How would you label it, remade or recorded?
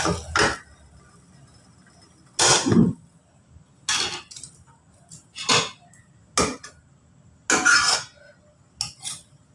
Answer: recorded